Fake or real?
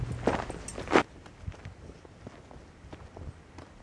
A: real